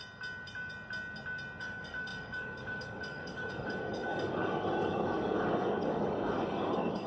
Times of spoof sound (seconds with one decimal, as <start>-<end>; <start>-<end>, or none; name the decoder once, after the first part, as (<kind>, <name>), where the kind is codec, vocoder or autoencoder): 1.6-7.1 (codec, DAC)